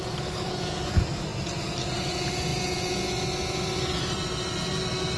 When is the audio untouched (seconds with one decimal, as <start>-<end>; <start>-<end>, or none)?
0.0-5.2